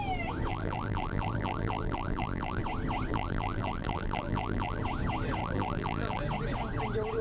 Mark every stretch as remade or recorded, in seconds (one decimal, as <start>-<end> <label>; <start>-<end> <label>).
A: 0.0-0.5 recorded; 0.5-2.6 remade; 2.6-3.1 recorded; 3.1-4.8 remade; 4.8-5.4 recorded; 5.4-6.2 remade; 6.2-7.2 recorded